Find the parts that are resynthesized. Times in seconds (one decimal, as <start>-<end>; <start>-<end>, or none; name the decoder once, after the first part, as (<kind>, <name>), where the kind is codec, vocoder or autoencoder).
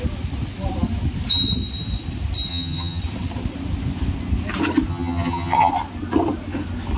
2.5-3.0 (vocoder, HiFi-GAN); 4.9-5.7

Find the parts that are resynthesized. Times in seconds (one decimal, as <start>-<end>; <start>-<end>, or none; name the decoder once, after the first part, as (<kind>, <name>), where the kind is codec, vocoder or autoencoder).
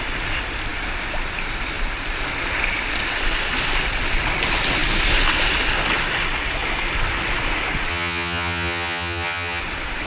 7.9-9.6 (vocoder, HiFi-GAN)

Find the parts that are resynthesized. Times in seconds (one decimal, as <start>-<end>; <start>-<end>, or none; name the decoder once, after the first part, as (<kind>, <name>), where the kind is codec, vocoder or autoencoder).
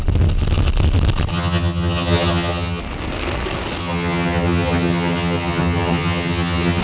1.3-2.8 (vocoder, HiFi-GAN); 3.8-6.8